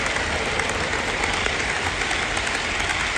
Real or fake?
real